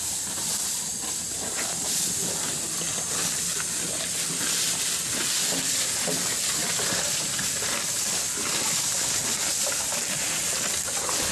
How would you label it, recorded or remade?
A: remade